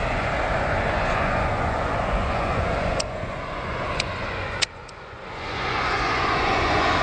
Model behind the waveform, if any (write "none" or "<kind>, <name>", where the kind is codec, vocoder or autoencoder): vocoder, Vocos